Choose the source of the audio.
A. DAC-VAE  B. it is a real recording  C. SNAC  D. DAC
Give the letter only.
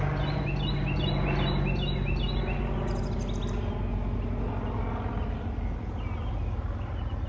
B